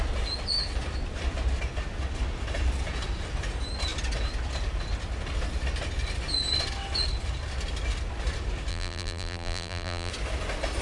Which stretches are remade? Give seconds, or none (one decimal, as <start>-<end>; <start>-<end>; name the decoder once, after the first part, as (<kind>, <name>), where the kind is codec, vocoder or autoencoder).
8.7-10.1 (vocoder, BigVGAN v2)